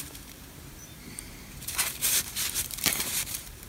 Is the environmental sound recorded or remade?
remade